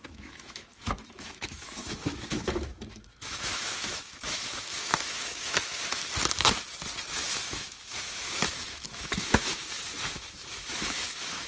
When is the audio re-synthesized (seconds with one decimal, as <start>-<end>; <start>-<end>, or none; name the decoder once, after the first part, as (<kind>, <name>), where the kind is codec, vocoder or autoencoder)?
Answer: 0.0-6.0 (autoencoder, DAC-VAE); 7.1-11.5